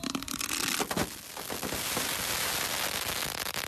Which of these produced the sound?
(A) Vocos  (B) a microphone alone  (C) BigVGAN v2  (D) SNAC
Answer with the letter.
B